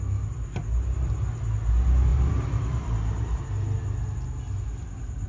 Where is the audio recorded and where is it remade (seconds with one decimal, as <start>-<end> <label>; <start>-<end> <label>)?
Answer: 0.0-2.1 recorded; 2.1-3.4 remade; 3.4-5.3 recorded